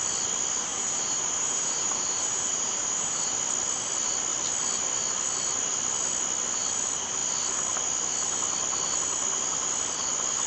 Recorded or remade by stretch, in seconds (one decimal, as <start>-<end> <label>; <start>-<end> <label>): 0.0-0.7 recorded; 0.7-3.3 remade; 3.3-10.5 recorded